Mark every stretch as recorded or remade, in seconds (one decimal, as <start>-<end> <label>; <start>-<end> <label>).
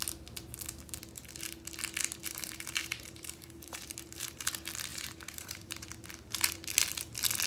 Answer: 0.0-2.2 recorded; 2.2-4.5 remade; 4.5-4.9 recorded; 4.9-5.9 remade; 5.9-7.5 recorded